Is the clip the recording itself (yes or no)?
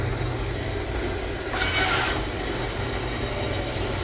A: yes